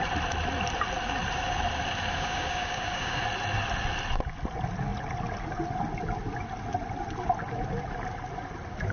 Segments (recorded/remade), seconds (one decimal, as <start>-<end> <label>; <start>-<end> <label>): 0.0-2.1 recorded; 2.1-3.2 remade; 3.2-8.9 recorded